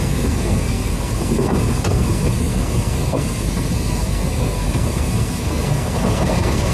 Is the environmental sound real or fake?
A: fake